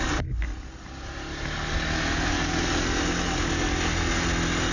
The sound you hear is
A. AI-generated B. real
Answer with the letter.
B